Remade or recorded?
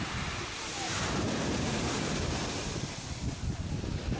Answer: recorded